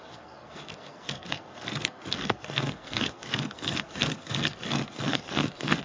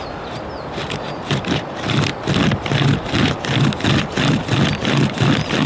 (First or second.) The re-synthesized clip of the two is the first